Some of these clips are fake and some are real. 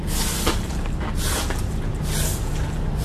real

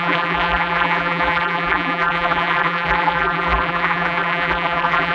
fake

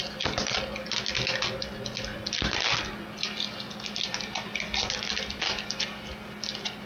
real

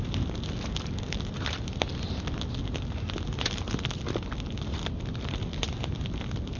real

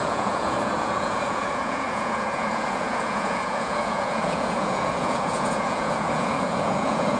fake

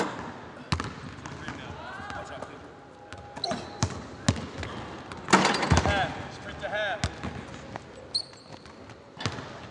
real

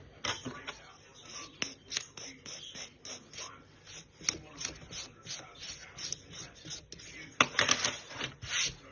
real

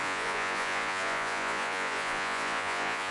fake